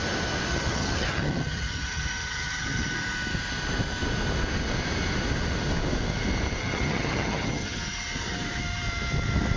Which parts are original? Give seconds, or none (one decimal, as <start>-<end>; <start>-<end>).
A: 0.0-0.5; 2.9-6.6; 7.8-9.6